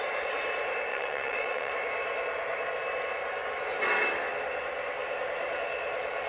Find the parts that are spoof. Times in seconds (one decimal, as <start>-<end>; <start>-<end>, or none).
0.9-1.7